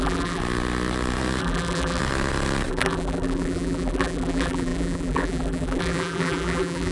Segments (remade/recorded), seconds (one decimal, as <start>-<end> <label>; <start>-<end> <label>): 0.0-0.4 remade; 0.4-1.4 recorded; 1.4-2.0 remade; 2.0-2.7 recorded; 2.7-6.9 remade